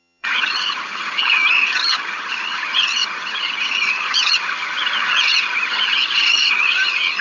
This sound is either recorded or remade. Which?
remade